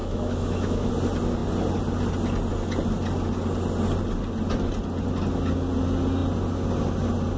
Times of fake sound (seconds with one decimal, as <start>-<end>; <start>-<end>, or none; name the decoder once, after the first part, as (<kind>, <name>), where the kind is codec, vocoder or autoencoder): 0.0-0.9 (autoencoder, DAC-VAE)